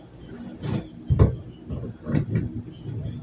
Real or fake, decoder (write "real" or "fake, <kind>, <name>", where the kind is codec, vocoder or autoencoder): real